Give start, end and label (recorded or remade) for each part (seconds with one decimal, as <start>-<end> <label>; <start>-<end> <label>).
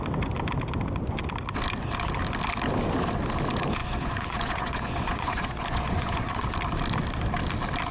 0.0-3.8 recorded; 3.8-6.5 remade; 6.5-7.9 recorded